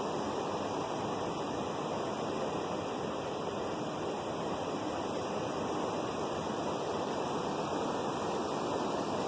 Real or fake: real